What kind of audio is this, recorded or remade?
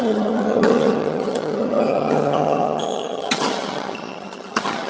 remade